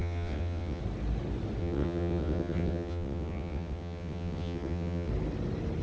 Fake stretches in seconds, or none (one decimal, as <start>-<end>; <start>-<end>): 0.0-0.8; 1.6-5.1

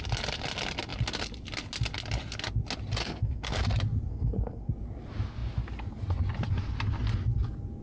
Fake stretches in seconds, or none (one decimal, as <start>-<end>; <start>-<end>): 3.0-3.6; 4.1-4.7

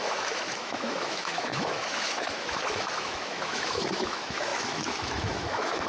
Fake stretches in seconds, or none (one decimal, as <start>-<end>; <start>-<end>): 0.0-5.9

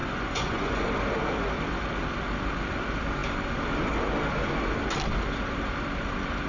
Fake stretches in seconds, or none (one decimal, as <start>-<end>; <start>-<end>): 0.0-0.8

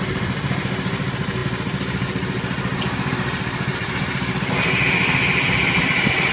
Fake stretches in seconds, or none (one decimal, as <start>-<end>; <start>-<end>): none

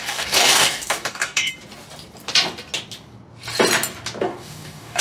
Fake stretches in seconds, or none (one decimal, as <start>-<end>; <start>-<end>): 0.0-1.5; 4.2-5.0

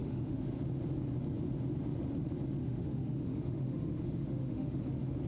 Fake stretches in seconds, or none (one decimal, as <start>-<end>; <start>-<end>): 0.0-0.5; 2.6-4.8

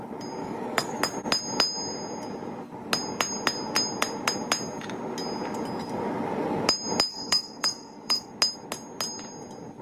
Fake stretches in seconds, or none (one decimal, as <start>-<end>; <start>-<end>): 0.4-1.0; 7.1-8.3